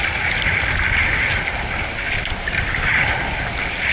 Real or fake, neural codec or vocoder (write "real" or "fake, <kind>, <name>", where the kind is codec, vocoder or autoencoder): real